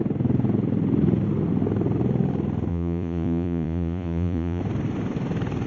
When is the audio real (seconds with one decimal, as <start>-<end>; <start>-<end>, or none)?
0.0-2.7; 4.6-5.7